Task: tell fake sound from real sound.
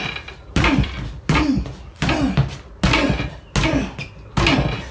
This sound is real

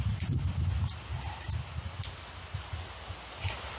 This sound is real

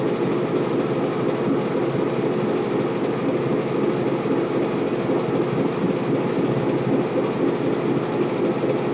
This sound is real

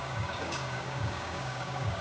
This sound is fake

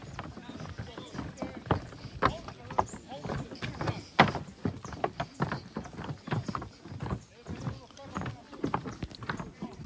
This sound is real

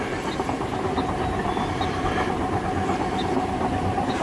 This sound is real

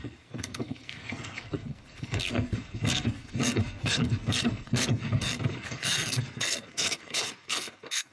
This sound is fake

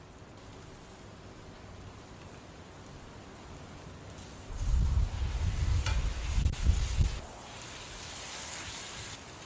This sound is real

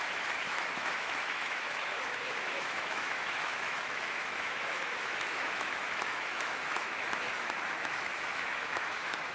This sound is fake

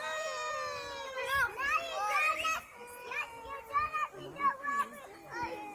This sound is real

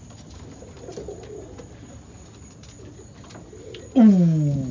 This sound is real